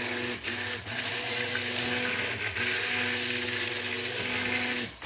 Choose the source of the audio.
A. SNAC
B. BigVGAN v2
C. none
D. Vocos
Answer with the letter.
C